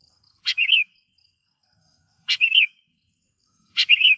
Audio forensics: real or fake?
fake